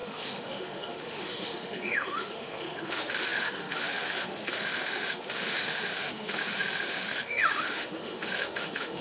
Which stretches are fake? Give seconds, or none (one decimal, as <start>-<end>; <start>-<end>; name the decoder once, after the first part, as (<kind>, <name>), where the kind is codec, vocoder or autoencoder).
0.0-9.0 (autoencoder, DAC-VAE)